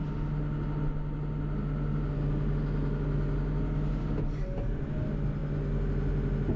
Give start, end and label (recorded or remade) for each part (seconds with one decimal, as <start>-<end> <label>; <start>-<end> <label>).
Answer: 0.0-6.6 recorded